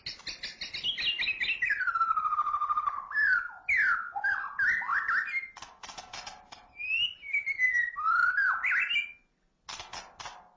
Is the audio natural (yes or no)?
yes